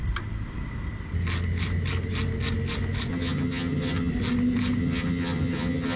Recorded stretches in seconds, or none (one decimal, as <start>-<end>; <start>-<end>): 0.0-3.1; 4.1-4.8